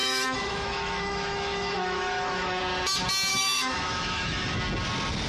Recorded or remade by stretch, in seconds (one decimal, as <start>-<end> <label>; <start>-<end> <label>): 0.0-2.6 remade; 2.6-3.3 recorded; 3.3-4.6 remade; 4.6-5.3 recorded